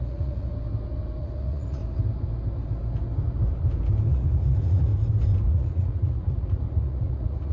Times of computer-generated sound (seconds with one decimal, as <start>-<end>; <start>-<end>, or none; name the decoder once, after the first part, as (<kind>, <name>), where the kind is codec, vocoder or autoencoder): 0.0-0.5 (vocoder, Vocos); 1.2-1.8; 4.1-4.9; 5.5-7.5